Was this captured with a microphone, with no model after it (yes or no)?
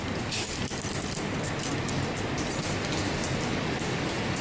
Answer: yes